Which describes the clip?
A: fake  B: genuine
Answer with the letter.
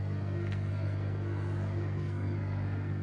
A